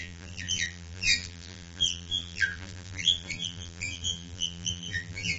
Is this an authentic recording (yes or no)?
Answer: no